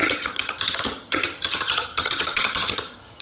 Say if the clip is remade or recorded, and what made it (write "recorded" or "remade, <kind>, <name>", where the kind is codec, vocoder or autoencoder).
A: remade, vocoder, HiFi-GAN